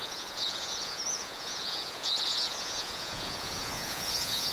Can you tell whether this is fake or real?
fake